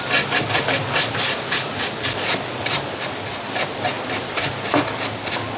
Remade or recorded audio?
recorded